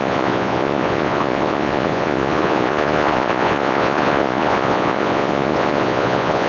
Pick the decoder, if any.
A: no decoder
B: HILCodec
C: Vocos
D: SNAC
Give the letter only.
C